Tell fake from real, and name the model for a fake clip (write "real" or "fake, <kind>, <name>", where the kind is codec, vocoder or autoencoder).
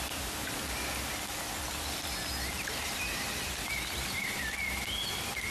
real